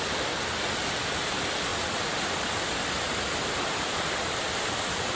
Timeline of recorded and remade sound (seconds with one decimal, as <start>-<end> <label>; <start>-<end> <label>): 0.0-5.2 recorded